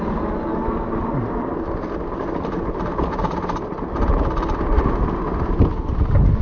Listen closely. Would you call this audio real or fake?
real